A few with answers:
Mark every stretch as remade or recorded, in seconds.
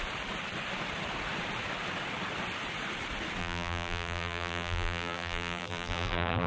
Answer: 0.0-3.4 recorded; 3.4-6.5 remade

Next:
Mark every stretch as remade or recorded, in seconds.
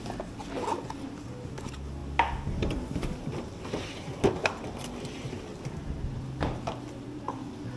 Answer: 0.0-5.5 recorded; 5.5-6.2 remade; 6.2-7.8 recorded